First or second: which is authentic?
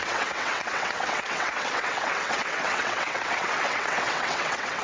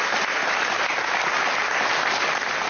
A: second